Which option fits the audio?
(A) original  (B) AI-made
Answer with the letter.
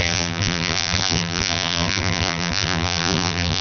B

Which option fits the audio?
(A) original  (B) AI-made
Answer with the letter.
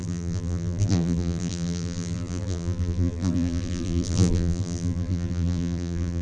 B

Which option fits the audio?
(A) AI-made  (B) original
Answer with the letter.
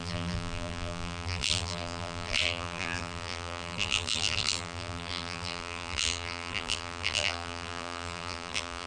A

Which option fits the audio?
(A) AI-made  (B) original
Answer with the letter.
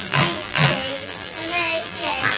A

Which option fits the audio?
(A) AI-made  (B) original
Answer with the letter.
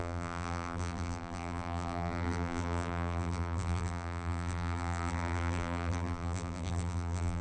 A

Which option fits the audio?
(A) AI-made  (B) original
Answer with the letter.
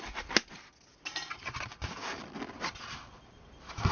B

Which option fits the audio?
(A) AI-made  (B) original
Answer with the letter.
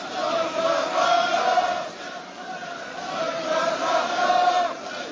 A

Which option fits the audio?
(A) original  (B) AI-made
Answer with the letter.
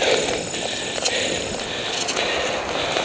A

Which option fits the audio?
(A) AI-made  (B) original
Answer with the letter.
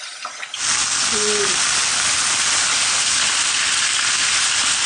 B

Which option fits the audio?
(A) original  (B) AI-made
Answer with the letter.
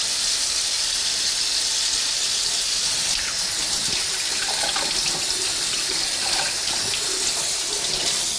A